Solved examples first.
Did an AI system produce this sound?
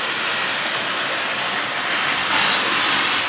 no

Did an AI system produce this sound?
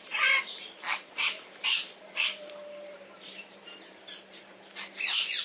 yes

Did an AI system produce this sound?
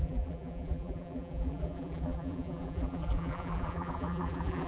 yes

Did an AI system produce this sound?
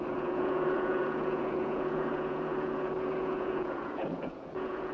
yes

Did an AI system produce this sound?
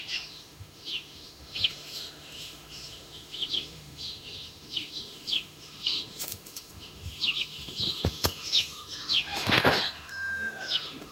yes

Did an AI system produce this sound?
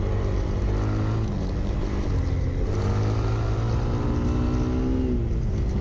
no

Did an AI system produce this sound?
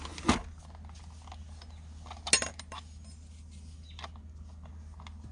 no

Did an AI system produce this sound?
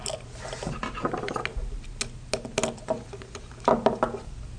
no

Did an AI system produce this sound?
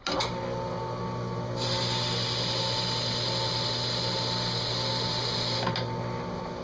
no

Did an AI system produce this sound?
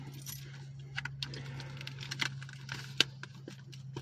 no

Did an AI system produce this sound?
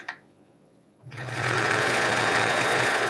yes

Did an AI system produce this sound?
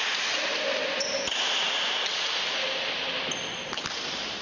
no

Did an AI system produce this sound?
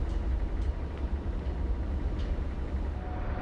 no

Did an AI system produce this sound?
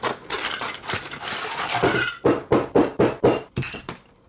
no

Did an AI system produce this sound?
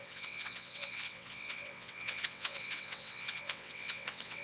yes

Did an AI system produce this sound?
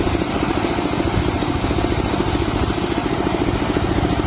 no